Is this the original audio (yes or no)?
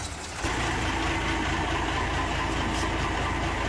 yes